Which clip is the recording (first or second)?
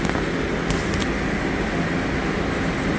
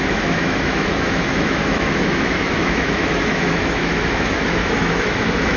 first